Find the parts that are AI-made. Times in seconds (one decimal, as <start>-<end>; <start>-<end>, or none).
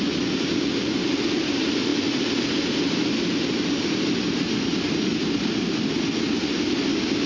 none